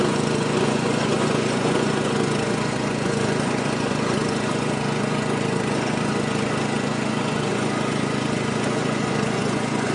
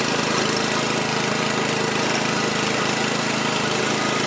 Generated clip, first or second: first